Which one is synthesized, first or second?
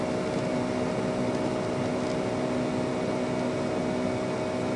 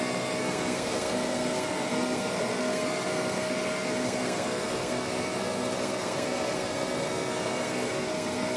second